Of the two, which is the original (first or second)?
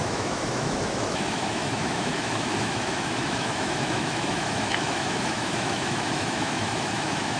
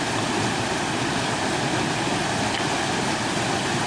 second